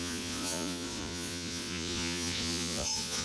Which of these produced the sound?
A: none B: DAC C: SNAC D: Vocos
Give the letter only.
D